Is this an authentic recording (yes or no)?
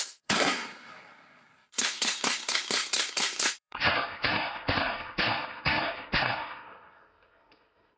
no